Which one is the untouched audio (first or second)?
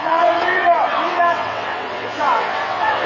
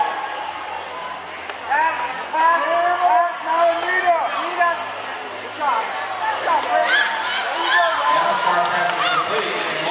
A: second